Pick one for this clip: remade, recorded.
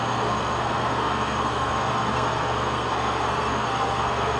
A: remade